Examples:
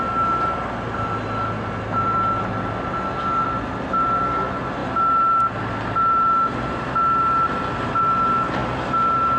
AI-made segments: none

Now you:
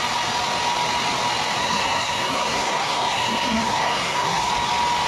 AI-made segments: 1.6-4.5 (codec, SNAC)

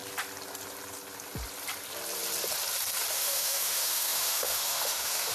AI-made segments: 3.1-5.3 (autoencoder, DAC-VAE)